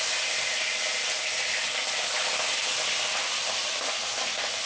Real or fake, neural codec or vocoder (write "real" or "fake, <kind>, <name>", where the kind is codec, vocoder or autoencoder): real